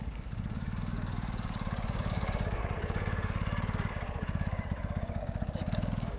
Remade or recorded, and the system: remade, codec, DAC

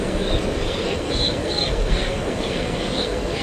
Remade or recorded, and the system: remade, codec, SNAC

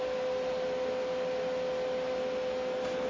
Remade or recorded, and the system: recorded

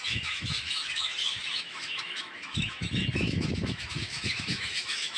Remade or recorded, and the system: remade, autoencoder, DAC-VAE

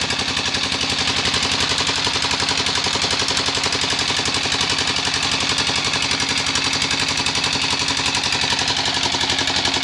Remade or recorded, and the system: recorded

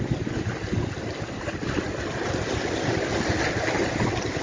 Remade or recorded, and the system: recorded